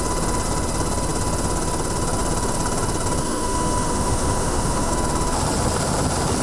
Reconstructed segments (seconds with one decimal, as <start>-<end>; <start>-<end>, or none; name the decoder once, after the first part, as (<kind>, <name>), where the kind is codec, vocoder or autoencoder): 3.2-4.9 (autoencoder, DAC-VAE)